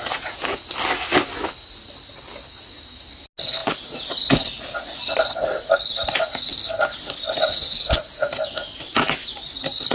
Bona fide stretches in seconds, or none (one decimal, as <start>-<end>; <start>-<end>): 0.0-9.9